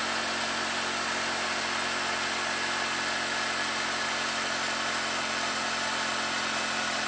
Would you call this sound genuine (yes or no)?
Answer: yes